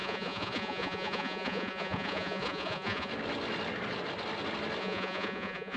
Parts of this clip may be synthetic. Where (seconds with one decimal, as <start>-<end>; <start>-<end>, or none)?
0.0-3.1; 4.8-5.8